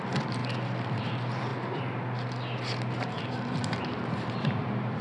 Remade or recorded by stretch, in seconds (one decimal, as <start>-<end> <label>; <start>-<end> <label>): 0.0-0.4 remade; 0.4-1.0 recorded; 1.0-1.5 remade; 1.5-3.5 recorded; 3.5-5.0 remade